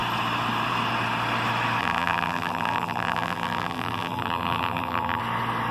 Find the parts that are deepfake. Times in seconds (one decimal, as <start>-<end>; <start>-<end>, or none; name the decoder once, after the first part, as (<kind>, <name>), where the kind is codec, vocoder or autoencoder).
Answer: 1.8-5.2 (vocoder, BigVGAN v2)